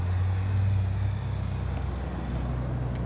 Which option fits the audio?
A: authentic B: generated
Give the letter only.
A